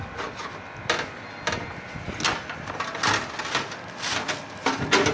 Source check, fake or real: real